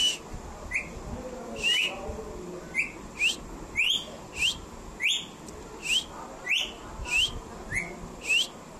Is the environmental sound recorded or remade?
recorded